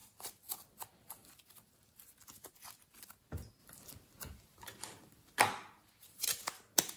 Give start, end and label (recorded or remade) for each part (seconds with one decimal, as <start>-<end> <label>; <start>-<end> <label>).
0.0-3.6 recorded; 3.6-5.4 remade; 5.4-7.0 recorded

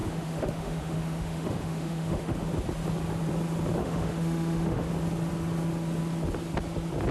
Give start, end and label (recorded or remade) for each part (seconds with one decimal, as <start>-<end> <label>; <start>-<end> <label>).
0.0-2.5 remade; 2.5-3.8 recorded; 3.8-4.9 remade; 4.9-7.1 recorded

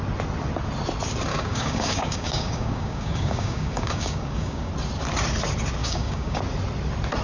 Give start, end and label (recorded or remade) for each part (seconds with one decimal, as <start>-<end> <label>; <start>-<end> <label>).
0.0-1.3 recorded; 1.3-4.7 remade; 4.7-5.8 recorded; 5.8-6.4 remade; 6.4-7.2 recorded

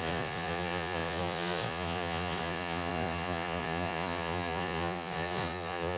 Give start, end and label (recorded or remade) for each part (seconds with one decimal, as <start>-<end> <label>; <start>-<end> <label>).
0.0-6.0 remade

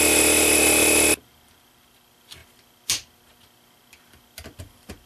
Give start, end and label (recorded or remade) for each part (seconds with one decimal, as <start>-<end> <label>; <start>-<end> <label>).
0.0-5.1 recorded

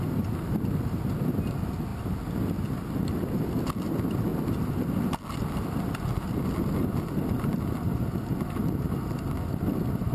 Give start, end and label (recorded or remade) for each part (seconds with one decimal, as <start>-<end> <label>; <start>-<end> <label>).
0.0-10.1 recorded

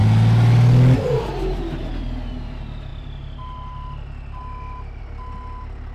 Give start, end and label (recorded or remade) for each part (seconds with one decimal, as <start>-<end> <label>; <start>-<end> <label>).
0.0-5.9 recorded